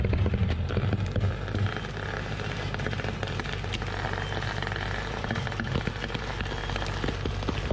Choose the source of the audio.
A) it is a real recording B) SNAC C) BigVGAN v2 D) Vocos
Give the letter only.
A